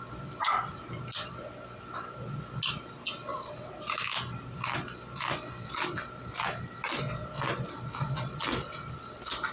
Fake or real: real